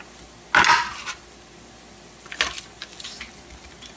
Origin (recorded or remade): recorded